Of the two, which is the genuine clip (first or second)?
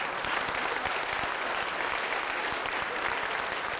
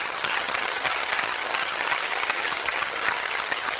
first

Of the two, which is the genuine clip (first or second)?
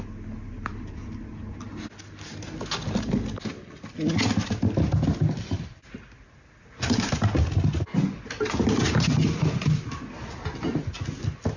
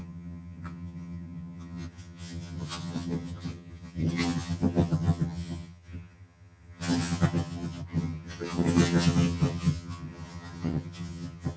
first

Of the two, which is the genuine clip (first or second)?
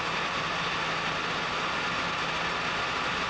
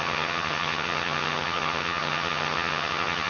first